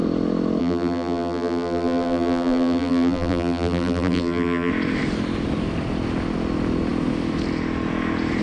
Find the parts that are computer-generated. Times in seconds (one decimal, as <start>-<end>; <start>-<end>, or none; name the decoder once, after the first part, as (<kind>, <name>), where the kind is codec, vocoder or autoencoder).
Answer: 0.6-4.7 (vocoder, BigVGAN v2)